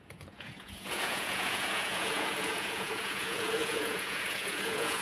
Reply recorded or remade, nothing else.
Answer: remade